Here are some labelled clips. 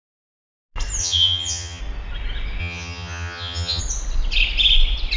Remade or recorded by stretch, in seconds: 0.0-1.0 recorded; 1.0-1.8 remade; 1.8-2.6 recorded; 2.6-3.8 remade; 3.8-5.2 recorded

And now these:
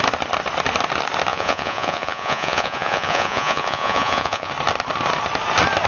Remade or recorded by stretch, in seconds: 0.0-1.3 recorded; 1.3-4.5 remade; 4.5-5.9 recorded

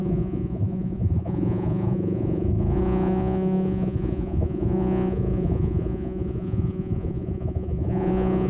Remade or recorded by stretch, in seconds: 0.0-8.5 remade

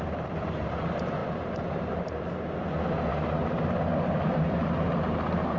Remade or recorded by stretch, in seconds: 0.0-3.1 remade; 3.1-4.2 recorded; 4.2-5.6 remade

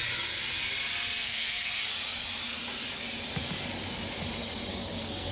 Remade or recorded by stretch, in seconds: 0.0-1.2 recorded; 1.2-1.8 remade; 1.8-4.7 recorded; 4.7-5.3 remade